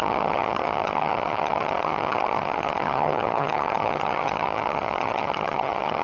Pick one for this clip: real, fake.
fake